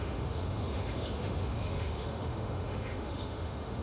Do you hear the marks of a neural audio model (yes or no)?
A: yes